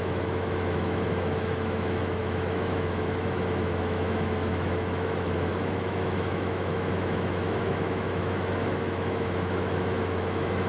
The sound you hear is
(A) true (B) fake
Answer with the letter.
B